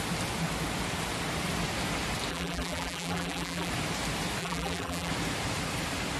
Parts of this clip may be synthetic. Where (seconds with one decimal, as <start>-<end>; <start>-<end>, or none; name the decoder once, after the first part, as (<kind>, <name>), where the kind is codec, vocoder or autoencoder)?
2.3-3.7 (vocoder, BigVGAN v2); 4.4-5.1